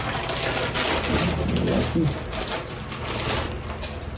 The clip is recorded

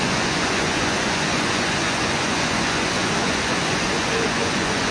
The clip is remade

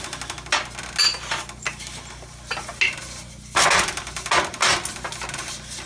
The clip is recorded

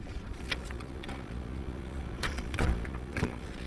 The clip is remade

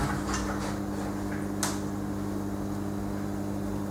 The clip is recorded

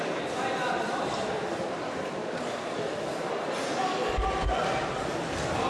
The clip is recorded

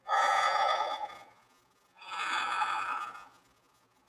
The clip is remade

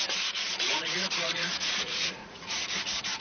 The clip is remade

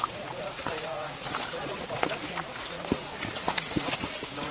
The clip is remade